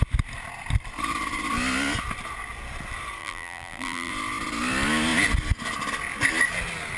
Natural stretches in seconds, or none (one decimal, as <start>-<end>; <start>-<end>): 0.0-3.2; 4.1-7.0